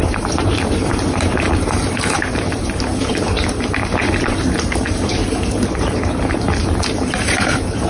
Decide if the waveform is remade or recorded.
remade